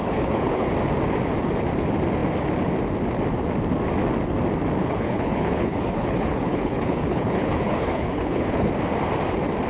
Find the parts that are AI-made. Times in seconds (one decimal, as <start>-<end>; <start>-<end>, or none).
0.0-0.7; 4.8-8.7